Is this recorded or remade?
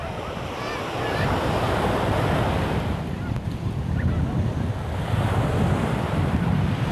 recorded